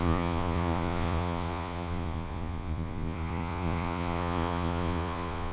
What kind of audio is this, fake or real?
fake